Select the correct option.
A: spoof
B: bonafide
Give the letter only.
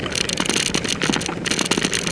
B